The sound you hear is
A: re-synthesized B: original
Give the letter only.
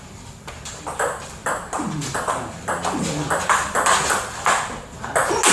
B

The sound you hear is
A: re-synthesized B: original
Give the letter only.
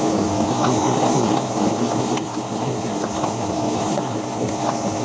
A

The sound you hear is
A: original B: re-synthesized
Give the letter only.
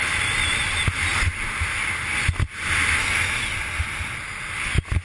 A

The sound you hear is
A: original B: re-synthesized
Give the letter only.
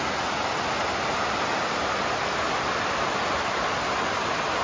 A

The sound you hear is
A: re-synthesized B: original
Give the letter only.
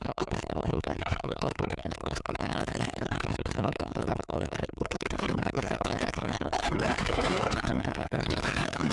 A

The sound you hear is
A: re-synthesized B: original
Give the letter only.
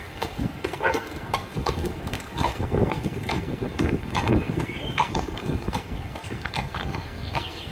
A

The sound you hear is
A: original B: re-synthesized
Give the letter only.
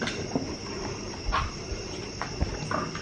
A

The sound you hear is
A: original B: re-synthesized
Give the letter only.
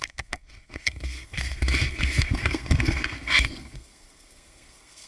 B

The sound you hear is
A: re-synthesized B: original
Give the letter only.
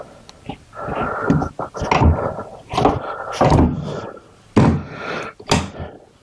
B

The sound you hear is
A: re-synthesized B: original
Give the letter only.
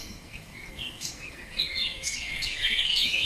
A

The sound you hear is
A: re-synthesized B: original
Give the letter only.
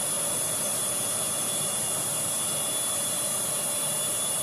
B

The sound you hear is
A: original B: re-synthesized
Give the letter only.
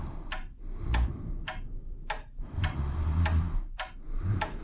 A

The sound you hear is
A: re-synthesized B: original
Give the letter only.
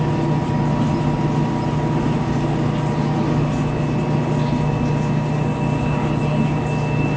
B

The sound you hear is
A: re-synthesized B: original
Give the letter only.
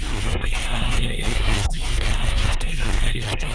A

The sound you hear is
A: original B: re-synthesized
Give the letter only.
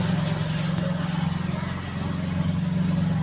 A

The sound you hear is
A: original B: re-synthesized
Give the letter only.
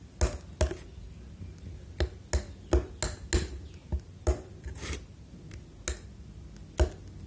A